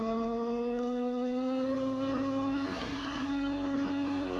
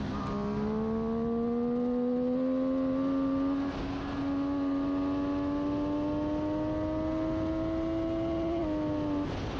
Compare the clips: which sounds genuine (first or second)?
second